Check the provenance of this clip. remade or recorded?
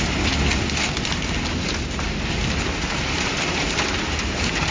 recorded